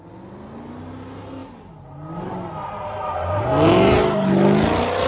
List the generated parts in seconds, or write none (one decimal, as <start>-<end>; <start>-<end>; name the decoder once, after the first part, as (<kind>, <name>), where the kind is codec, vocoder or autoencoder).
none